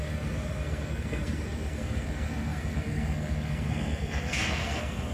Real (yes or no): no